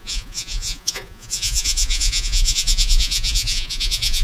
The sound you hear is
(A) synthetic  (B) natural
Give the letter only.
A